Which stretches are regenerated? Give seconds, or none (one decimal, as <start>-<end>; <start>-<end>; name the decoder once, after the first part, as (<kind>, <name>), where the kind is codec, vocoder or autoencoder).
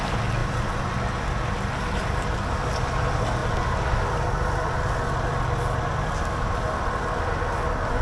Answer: 0.4-1.2 (vocoder, BigVGAN v2)